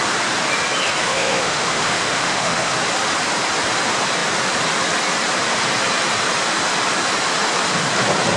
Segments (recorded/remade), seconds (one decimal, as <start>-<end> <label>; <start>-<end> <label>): 0.0-1.0 recorded; 1.0-2.7 remade; 2.7-8.4 recorded